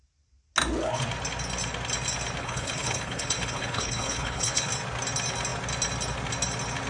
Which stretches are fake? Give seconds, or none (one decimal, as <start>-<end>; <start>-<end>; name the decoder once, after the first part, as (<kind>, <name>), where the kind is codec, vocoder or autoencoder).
2.4-4.7 (codec, HILCodec)